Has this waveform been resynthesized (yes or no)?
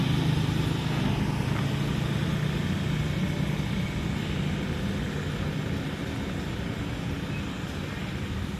no